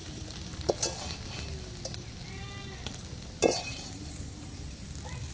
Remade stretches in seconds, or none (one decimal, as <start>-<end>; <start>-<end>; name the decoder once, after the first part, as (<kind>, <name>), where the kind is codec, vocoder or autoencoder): 0.0-0.6 (vocoder, BigVGAN v2); 3.4-4.7